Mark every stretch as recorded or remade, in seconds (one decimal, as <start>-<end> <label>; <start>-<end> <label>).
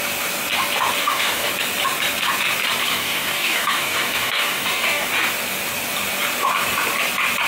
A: 0.0-1.0 recorded; 1.0-1.5 remade; 1.5-2.9 recorded; 2.9-5.1 remade; 5.1-7.5 recorded